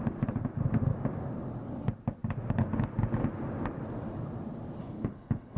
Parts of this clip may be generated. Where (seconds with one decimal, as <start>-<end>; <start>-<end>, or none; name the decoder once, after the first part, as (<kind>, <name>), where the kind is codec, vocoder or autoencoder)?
4.8-5.6 (codec, HILCodec)